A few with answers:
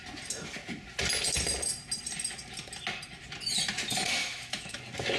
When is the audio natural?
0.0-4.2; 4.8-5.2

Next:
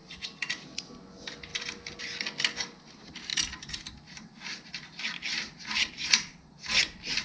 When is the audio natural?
0.0-7.2